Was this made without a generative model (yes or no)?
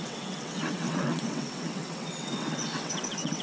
no